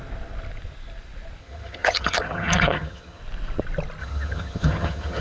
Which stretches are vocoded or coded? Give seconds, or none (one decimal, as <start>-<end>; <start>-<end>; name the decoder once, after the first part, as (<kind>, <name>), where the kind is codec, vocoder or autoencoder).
1.4-3.2 (vocoder, HiFi-GAN); 4.0-5.2